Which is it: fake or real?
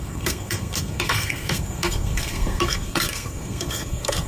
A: fake